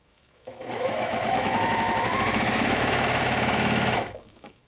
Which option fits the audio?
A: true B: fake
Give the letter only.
B